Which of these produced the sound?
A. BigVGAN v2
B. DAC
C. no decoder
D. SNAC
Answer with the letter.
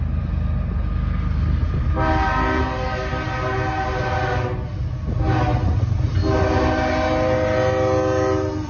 C